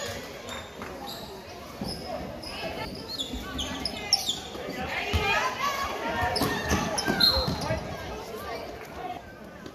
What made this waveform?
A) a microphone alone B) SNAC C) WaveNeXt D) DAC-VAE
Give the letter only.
A